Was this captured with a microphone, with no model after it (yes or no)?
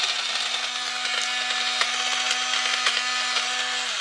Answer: yes